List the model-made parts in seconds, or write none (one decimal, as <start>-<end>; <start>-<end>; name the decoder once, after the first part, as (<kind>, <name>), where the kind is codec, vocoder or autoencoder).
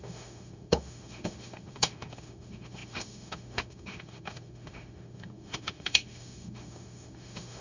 0.0-7.6 (autoencoder, DAC-VAE)